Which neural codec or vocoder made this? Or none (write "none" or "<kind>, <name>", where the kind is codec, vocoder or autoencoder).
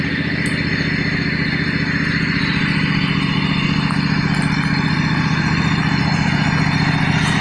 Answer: none